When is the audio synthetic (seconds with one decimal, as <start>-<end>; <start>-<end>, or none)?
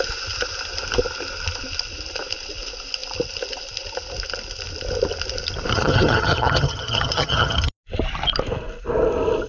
5.7-7.7